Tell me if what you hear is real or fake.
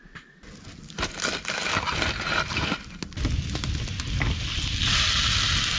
real